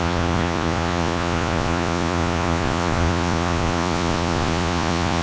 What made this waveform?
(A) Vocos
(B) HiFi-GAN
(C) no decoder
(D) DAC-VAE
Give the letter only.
A